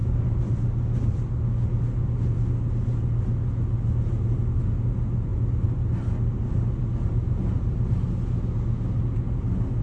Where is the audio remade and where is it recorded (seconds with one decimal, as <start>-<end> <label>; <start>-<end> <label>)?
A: 0.0-9.8 recorded